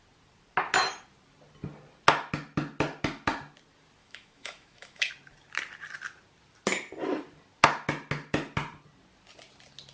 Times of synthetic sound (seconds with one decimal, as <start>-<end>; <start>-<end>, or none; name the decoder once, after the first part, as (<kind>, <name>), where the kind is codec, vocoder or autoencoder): 4.0-5.1 (autoencoder, DAC-VAE)